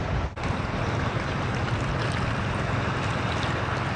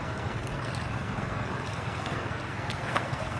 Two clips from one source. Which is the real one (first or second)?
first